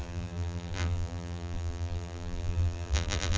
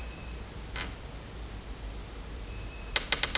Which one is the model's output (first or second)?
first